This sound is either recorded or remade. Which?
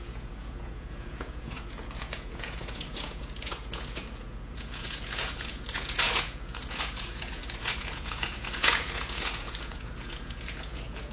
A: remade